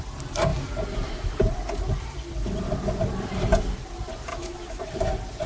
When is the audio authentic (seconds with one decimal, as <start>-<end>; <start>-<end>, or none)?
0.0-4.3; 4.8-5.5